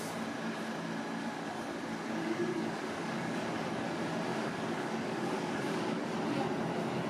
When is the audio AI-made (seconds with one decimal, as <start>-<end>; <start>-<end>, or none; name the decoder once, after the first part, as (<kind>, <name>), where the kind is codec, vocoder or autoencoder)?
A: 1.2-3.9 (codec, DAC); 4.3-6.1